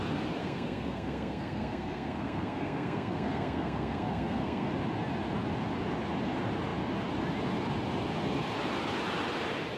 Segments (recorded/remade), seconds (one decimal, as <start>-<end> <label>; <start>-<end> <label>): 0.0-0.4 recorded; 0.4-4.7 remade; 4.7-9.8 recorded